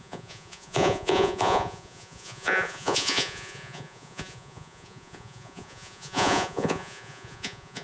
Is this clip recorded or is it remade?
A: remade